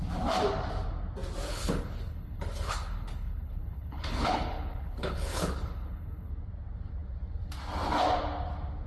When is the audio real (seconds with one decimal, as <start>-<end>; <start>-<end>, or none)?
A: 0.0-1.5; 6.3-8.9